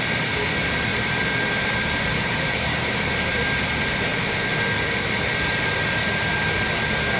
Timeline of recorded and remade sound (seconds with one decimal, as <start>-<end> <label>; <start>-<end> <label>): 0.0-0.9 recorded; 0.9-3.1 remade; 3.1-7.2 recorded